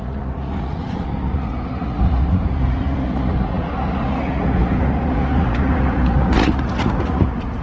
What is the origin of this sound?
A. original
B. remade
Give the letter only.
B